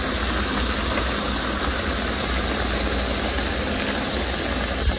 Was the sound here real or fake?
real